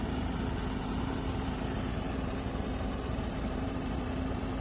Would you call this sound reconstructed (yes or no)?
yes